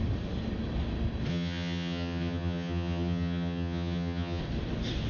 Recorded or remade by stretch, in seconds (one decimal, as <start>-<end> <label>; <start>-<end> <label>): 0.0-1.3 recorded; 1.3-4.4 remade; 4.4-5.1 recorded